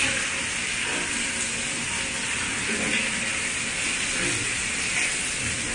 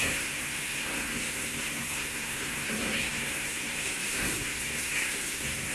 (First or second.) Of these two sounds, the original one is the first